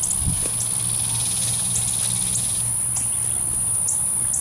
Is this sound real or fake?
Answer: real